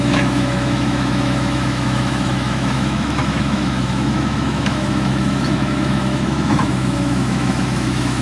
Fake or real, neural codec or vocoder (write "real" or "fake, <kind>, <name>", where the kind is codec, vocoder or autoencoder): fake, autoencoder, DAC-VAE